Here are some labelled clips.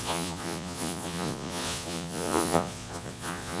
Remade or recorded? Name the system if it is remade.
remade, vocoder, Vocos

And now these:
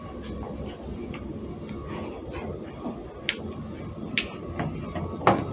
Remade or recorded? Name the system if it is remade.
recorded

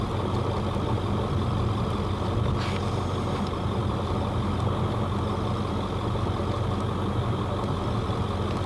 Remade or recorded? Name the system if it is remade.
recorded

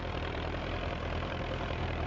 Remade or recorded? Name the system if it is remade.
remade, vocoder, BigVGAN v2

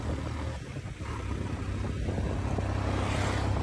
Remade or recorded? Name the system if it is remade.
recorded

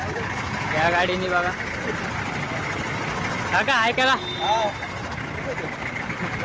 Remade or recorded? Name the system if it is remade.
recorded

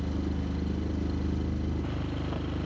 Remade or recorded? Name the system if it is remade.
recorded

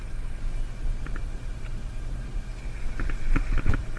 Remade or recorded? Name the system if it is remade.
recorded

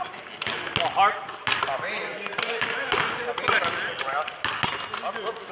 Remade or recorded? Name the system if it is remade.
recorded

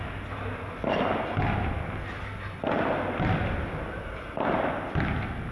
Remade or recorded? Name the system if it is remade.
recorded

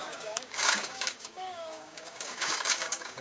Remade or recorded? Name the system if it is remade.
remade, codec, DAC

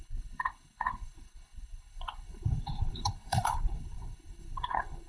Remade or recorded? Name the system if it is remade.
remade, codec, HILCodec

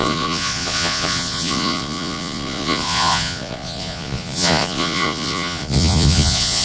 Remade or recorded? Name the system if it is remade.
remade, vocoder, Vocos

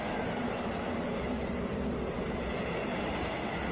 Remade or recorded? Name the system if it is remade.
recorded